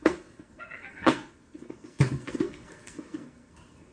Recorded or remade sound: remade